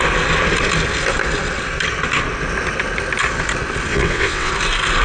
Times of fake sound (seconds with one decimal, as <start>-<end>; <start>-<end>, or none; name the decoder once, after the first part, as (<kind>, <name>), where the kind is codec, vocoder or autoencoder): 3.9-4.5 (vocoder, WaveNeXt)